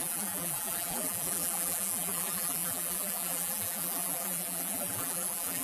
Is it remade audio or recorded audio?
remade